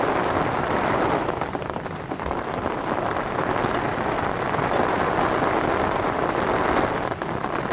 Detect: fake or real real